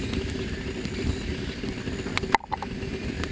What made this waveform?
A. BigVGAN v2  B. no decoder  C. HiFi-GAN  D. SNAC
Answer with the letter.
B